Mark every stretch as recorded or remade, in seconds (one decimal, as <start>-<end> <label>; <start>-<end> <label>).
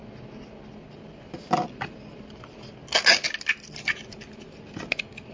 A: 0.0-5.3 recorded